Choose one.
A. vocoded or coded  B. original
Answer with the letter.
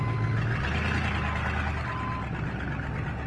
B